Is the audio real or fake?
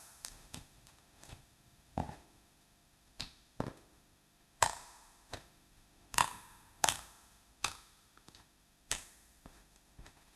fake